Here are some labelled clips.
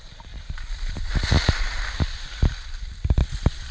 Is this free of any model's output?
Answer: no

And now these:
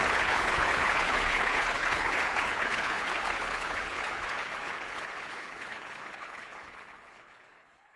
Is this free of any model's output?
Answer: no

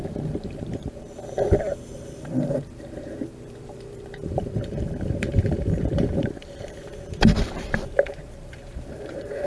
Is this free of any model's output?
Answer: no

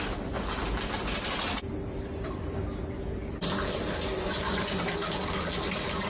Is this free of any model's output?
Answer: yes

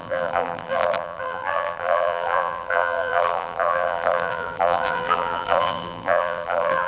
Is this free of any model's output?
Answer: no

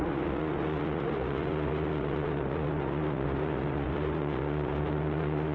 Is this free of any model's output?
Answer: no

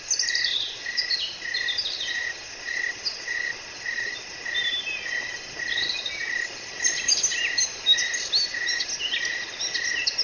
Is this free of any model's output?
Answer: yes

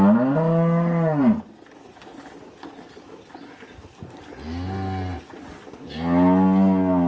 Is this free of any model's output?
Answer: yes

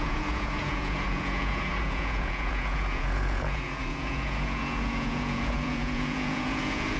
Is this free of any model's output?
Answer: no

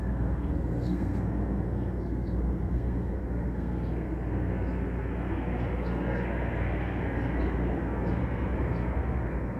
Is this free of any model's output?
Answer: no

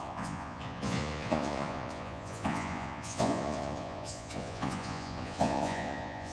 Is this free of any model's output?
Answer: no